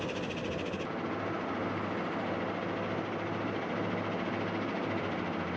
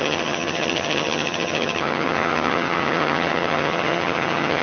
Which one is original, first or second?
first